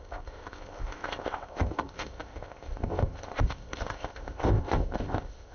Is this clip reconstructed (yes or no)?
yes